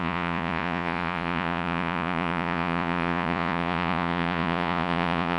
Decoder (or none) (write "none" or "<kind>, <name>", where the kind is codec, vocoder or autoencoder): vocoder, Vocos